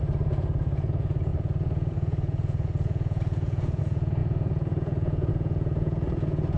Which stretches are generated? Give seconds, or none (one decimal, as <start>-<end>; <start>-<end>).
0.0-6.6